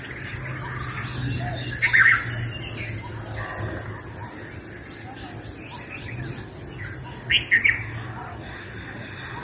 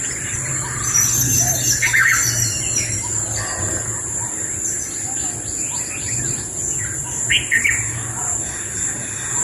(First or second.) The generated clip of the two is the second